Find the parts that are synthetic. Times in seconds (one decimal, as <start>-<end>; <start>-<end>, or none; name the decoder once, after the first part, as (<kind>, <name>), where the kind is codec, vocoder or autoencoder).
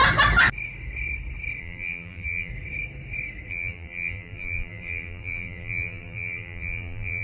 1.6-2.5 (vocoder, BigVGAN v2); 3.5-7.2